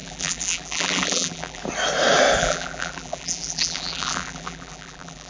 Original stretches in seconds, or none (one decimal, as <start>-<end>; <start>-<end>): 1.6-2.4